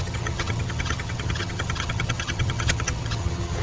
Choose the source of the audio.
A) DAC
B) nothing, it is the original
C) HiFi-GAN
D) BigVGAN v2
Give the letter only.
C